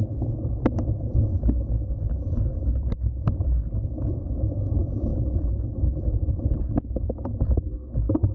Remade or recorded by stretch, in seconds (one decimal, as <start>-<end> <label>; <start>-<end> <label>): 0.0-1.2 remade; 1.2-2.1 recorded; 2.1-8.3 remade